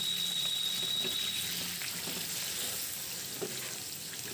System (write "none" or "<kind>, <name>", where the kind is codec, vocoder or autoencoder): none